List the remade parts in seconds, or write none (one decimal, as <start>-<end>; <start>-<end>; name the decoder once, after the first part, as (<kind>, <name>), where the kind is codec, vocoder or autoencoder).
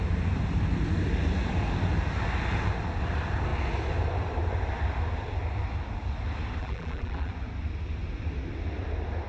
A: 6.6-7.3 (vocoder, BigVGAN v2)